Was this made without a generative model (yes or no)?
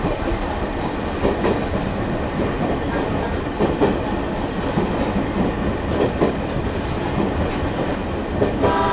yes